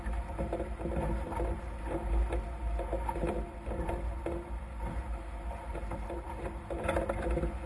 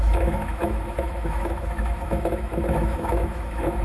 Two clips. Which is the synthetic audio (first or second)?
second